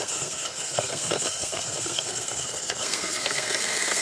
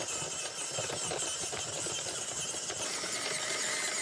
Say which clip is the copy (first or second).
first